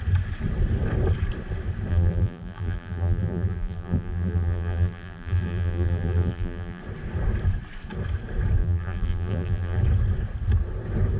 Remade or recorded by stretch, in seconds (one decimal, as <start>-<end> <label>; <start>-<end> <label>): 0.0-1.9 recorded; 1.9-6.8 remade; 6.8-8.6 recorded; 8.6-9.8 remade; 9.8-11.2 recorded